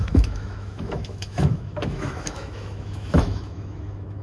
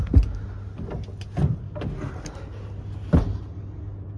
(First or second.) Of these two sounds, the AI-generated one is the first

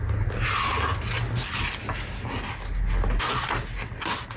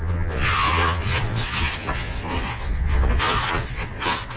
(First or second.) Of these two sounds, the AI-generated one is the second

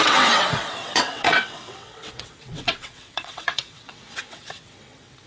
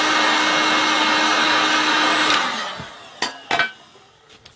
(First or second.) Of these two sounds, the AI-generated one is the first